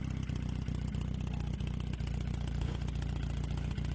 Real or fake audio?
real